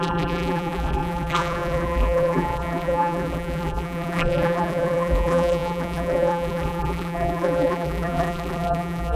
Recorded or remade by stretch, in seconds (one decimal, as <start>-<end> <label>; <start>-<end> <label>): 0.0-9.2 remade